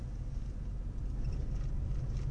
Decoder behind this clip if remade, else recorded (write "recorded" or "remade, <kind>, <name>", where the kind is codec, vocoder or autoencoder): recorded